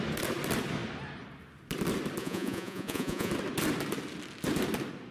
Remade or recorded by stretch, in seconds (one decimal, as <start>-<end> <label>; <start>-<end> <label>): 0.0-2.2 recorded; 2.2-3.3 remade; 3.3-5.1 recorded